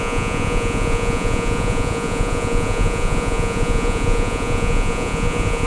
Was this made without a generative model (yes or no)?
no